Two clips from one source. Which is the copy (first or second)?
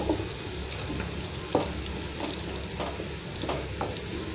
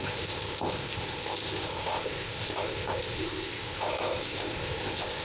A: second